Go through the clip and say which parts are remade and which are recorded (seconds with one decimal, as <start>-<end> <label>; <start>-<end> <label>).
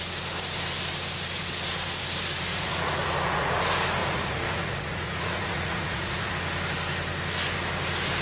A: 0.0-2.5 recorded; 2.5-3.6 remade; 3.6-4.0 recorded; 4.0-6.3 remade; 6.3-8.2 recorded